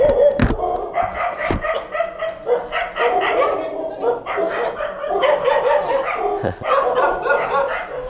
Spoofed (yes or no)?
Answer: no